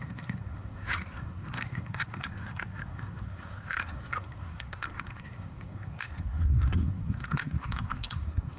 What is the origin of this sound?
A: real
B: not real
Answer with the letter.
B